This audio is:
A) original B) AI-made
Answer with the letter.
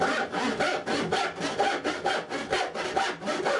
A